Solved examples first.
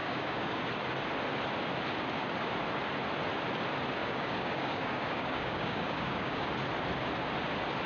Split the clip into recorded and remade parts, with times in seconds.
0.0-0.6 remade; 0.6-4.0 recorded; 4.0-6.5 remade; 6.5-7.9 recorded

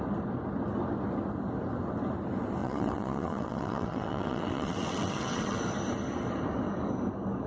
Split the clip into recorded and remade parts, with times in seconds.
0.0-2.6 recorded; 2.6-5.6 remade; 5.6-7.5 recorded

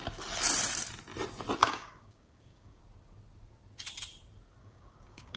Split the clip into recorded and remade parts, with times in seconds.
0.0-1.6 recorded; 1.6-2.8 remade; 2.8-4.6 recorded; 4.6-5.4 remade

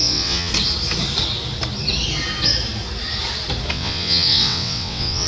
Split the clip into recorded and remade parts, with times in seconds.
0.0-0.5 remade; 0.5-3.7 recorded; 3.7-5.3 remade

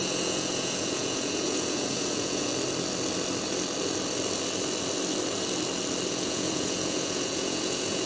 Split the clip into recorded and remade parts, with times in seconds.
0.0-2.5 remade; 2.5-6.1 recorded; 6.1-8.1 remade

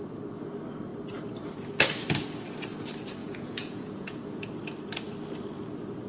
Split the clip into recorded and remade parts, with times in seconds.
0.0-3.2 recorded; 3.2-4.6 remade; 4.6-6.1 recorded